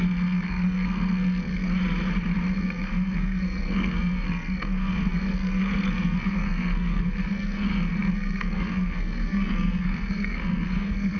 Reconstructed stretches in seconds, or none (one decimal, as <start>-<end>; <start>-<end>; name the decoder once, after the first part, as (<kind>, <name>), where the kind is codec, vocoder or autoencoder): 0.0-1.5 (codec, SNAC); 2.6-11.2